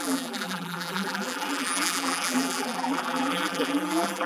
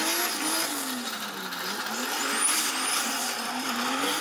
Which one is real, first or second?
second